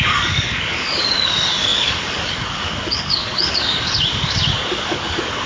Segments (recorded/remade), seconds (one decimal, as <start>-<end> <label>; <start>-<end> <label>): 0.0-5.5 remade